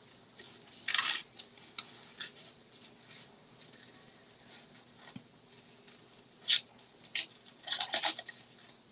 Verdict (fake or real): real